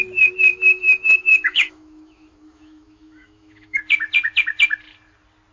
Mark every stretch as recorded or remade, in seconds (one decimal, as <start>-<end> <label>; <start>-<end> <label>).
0.0-0.5 recorded; 0.5-3.8 remade; 3.8-5.5 recorded

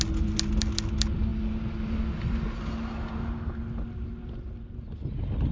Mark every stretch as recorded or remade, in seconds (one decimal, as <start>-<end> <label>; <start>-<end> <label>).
0.0-5.5 recorded

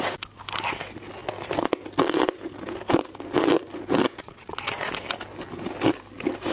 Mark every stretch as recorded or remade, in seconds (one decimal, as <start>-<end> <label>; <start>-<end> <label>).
0.0-4.1 recorded; 4.1-4.9 remade; 4.9-6.5 recorded

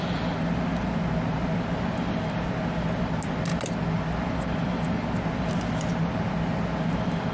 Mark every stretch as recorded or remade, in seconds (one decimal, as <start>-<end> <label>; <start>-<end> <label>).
0.0-7.3 recorded